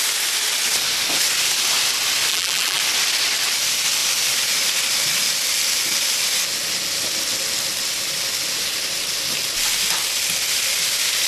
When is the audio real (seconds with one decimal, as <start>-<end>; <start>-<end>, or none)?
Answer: 0.0-2.3; 2.8-11.3